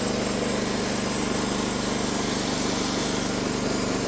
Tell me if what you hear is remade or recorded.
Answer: recorded